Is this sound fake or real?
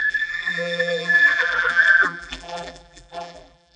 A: fake